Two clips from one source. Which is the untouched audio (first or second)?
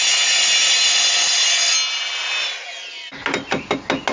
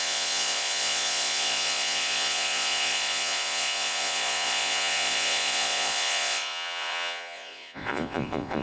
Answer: first